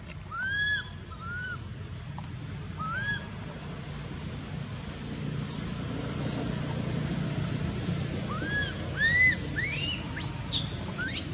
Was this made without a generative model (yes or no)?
yes